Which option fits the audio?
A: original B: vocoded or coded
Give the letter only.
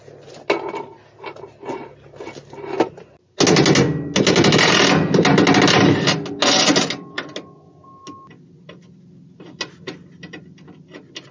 A